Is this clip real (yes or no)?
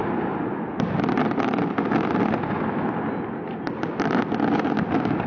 yes